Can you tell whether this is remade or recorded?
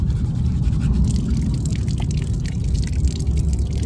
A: recorded